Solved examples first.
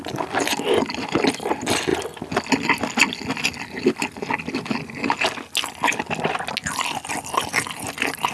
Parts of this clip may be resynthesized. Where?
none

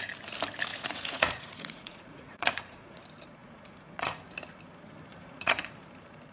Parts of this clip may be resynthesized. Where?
0.7-3.0; 3.4-4.3; 5.1-5.7

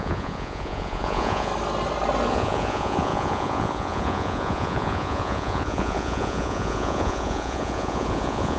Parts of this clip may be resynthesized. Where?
0.0-1.5; 2.3-8.6

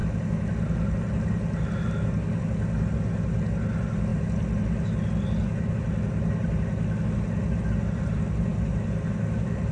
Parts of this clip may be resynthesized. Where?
none

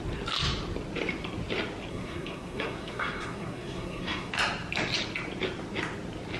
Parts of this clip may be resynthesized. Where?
1.9-4.3

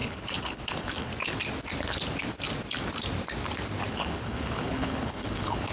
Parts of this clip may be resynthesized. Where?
0.0-1.1; 3.9-5.7